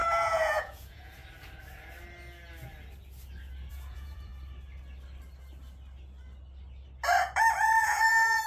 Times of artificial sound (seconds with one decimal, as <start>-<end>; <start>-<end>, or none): 0.0-1.2; 3.7-4.3; 7.8-8.5